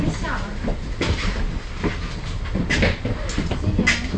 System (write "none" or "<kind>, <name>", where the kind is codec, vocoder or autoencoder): none